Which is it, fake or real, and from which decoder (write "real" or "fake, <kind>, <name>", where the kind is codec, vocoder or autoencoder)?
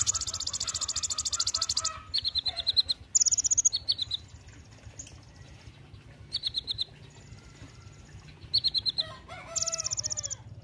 real